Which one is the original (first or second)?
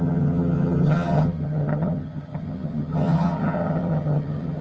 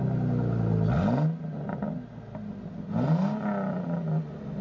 second